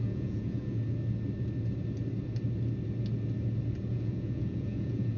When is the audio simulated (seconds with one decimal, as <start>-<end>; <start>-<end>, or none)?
0.0-0.8; 3.9-5.2